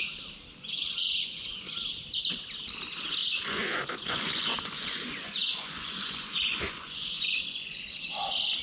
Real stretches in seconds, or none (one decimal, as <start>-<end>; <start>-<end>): 0.0-0.6; 1.7-3.2; 7.8-8.6